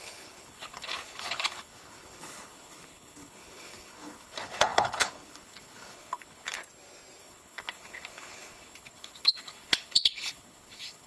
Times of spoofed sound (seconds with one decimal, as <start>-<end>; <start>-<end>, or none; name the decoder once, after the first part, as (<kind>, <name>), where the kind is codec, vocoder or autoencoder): 0.0-6.6 (codec, HILCodec); 7.2-11.1